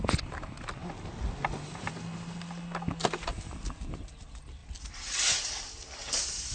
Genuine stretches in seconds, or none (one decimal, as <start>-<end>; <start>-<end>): 0.0-6.5